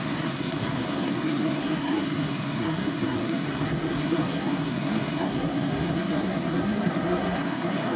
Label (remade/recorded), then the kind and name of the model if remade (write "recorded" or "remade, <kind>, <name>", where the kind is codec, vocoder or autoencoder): remade, codec, SNAC